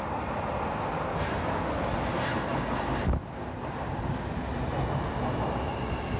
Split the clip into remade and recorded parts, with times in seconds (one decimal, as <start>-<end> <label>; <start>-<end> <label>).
0.0-6.2 recorded